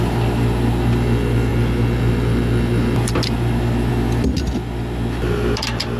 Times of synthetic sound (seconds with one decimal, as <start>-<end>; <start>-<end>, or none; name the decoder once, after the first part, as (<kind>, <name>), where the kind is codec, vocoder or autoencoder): none